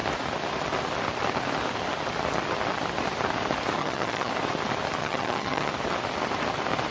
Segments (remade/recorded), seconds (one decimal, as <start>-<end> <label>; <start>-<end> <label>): 0.0-3.8 recorded; 3.8-4.3 remade; 4.3-5.0 recorded; 5.0-5.7 remade; 5.7-6.9 recorded